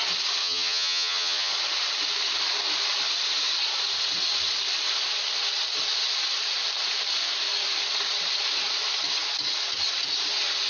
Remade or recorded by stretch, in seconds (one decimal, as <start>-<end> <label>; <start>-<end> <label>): 0.0-0.4 recorded; 0.4-1.5 remade; 1.5-10.7 recorded